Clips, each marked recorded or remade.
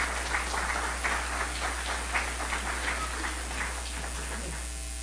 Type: recorded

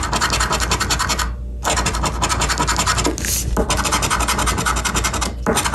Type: recorded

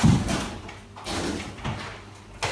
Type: recorded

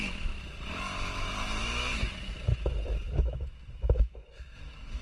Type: remade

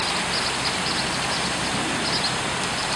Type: recorded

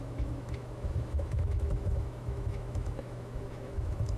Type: remade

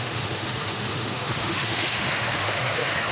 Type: remade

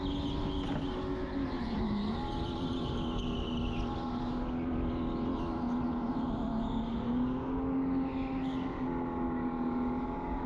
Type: recorded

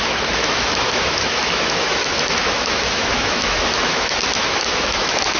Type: remade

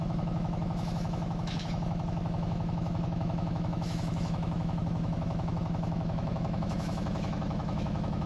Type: remade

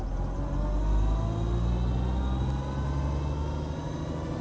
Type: recorded